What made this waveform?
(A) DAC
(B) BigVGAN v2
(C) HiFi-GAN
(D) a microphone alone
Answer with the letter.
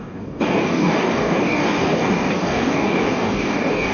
A